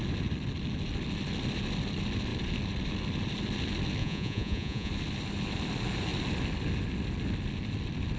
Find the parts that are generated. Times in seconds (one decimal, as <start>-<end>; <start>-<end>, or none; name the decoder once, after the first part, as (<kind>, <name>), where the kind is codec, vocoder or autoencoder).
4.0-4.9 (vocoder, Vocos)

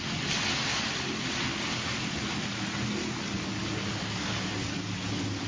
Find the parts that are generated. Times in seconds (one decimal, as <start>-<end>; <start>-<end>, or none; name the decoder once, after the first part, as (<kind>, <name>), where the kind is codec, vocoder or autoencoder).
none